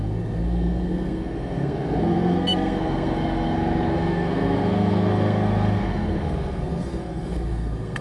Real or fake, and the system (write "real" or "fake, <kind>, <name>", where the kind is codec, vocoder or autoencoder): fake, codec, SNAC